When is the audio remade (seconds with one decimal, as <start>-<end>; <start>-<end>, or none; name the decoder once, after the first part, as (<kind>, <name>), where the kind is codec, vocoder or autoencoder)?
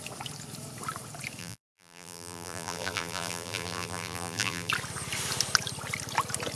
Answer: 1.4-4.7 (vocoder, BigVGAN v2)